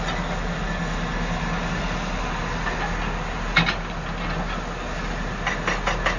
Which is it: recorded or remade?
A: recorded